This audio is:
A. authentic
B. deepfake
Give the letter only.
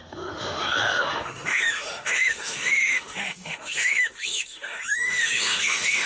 B